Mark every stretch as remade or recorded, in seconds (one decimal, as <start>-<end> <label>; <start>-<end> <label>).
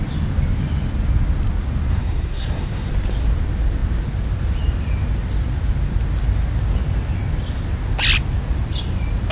0.0-1.9 recorded; 1.9-2.9 remade; 2.9-9.3 recorded